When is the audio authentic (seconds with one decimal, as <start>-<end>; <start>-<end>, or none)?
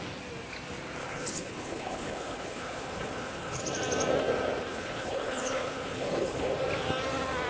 0.0-1.0; 3.6-4.7; 6.5-7.5